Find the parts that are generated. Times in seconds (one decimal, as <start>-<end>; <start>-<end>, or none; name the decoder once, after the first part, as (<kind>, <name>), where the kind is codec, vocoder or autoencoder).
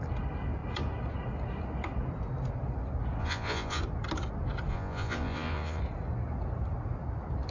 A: 3.2-3.8 (vocoder, Vocos); 4.7-5.8